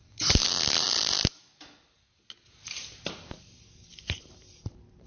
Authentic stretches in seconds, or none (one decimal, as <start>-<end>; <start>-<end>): 0.4-2.7